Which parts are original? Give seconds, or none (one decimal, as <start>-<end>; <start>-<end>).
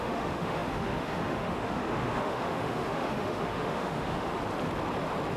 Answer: 4.4-5.4